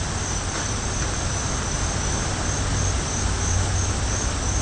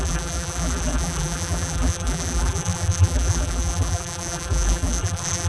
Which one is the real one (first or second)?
first